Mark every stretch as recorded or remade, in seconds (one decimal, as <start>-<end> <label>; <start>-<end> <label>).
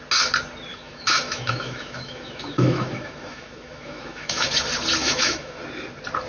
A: 0.0-0.7 recorded; 0.7-4.5 remade; 4.5-5.0 recorded; 5.0-5.6 remade; 5.6-6.3 recorded